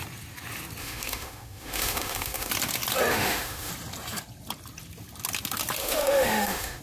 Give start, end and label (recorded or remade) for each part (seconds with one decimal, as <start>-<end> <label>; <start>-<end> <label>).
0.0-0.8 recorded; 0.8-2.5 remade; 2.5-3.1 recorded; 3.1-3.7 remade; 3.7-5.8 recorded; 5.8-6.8 remade